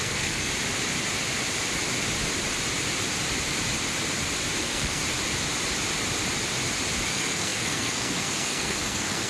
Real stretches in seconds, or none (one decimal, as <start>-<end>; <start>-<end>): 0.5-4.6; 5.0-7.1